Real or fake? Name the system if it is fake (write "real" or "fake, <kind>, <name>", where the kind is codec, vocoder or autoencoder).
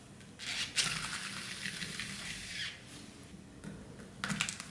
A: real